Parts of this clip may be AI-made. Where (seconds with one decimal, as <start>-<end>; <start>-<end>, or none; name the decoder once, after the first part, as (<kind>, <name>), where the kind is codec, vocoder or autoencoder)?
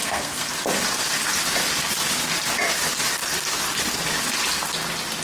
0.0-0.5 (codec, SNAC)